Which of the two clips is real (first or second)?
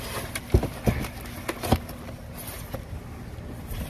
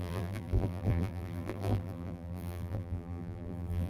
first